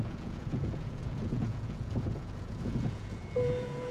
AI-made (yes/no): yes